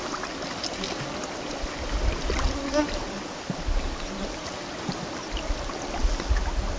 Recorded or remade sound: recorded